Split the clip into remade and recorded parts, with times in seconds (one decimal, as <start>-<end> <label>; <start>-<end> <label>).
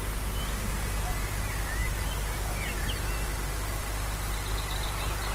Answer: 0.0-5.3 recorded